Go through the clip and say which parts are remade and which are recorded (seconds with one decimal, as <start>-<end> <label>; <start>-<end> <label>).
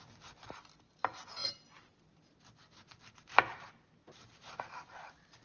0.0-5.4 recorded